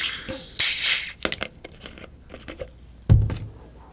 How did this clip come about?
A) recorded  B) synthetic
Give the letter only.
A